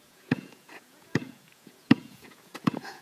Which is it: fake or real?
fake